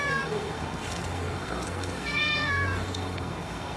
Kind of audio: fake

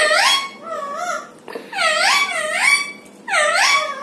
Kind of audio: real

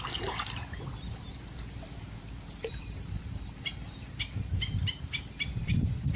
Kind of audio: fake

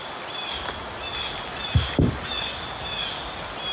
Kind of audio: real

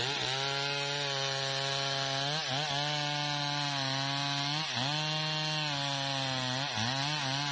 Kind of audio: real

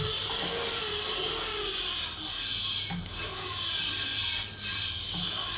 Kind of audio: real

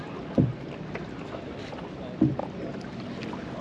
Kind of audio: real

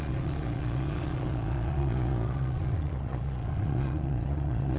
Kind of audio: fake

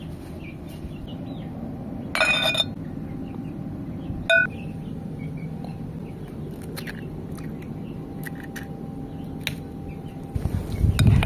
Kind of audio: real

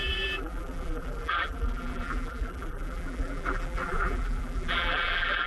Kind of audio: fake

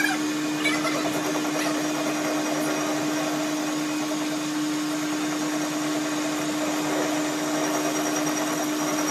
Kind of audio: real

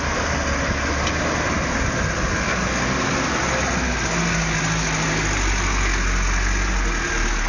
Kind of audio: real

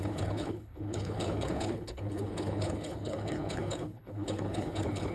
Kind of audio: fake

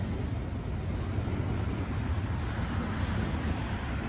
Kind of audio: real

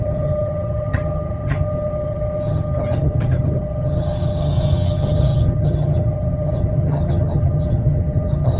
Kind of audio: fake